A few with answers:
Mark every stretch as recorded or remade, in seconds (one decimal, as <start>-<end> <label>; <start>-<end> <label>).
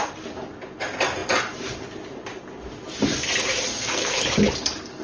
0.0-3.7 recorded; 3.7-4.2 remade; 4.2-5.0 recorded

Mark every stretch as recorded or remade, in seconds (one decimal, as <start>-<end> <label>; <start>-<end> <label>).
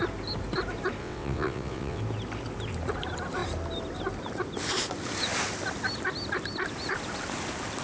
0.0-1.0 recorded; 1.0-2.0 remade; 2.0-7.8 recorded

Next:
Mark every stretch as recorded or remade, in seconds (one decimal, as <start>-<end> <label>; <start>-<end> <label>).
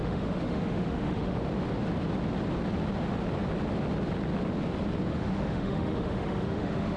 0.0-1.4 remade; 1.4-5.1 recorded; 5.1-7.0 remade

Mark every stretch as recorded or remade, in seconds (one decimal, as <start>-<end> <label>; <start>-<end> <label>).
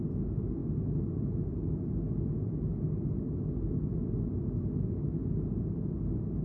0.0-6.4 recorded